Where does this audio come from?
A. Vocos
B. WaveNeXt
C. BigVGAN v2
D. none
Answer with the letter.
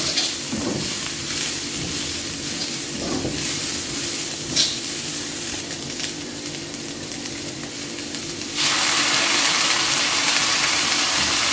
C